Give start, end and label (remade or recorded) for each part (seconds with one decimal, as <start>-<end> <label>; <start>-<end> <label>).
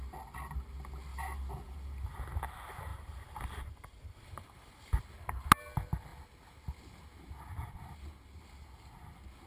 0.0-1.1 recorded; 1.1-2.1 remade; 2.1-2.9 recorded; 2.9-5.0 remade; 5.0-9.5 recorded